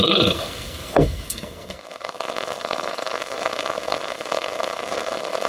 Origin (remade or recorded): remade